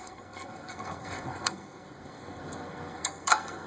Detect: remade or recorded remade